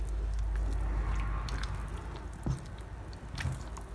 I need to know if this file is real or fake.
real